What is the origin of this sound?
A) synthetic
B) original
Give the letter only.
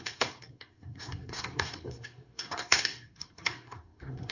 A